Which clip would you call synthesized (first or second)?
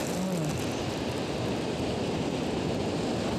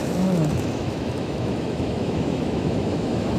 second